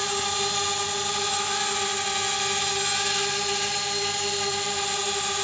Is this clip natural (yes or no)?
yes